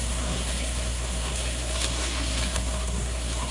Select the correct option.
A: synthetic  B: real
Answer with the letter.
A